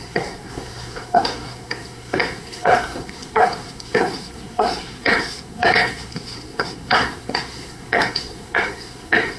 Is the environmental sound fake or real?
fake